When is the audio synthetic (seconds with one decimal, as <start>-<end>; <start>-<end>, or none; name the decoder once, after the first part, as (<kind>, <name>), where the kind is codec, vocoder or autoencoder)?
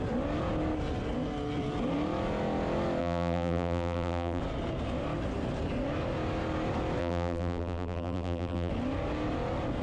3.0-4.4 (vocoder, BigVGAN v2); 7.0-8.7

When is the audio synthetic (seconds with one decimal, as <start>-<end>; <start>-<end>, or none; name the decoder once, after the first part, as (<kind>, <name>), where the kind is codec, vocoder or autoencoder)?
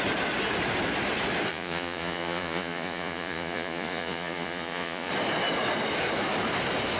1.5-5.1 (vocoder, Vocos)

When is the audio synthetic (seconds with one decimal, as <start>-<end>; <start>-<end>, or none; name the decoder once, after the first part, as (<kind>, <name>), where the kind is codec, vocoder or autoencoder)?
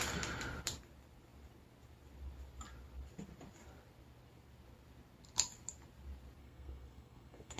6.4-7.6 (codec, SNAC)